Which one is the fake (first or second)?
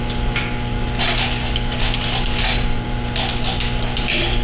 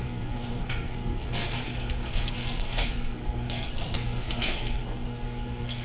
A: second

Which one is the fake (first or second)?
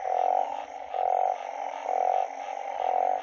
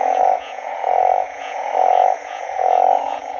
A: second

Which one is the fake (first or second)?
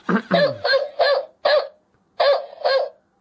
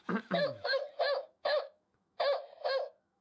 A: second